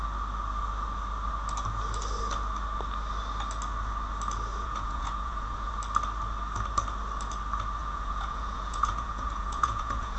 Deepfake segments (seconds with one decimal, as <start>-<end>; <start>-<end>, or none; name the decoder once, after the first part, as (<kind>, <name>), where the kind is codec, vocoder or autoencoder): 4.5-5.7 (vocoder, Vocos); 7.8-10.2